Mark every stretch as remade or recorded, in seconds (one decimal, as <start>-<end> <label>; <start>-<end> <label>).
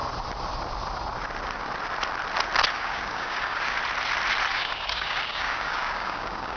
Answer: 0.0-2.7 recorded; 2.7-3.8 remade; 3.8-4.5 recorded; 4.5-6.6 remade